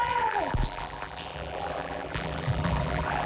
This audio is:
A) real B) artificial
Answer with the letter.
B